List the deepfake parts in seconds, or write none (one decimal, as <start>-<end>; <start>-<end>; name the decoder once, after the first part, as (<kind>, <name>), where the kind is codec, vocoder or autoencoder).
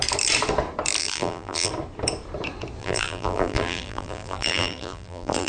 1.0-1.7 (vocoder, BigVGAN v2); 2.8-5.5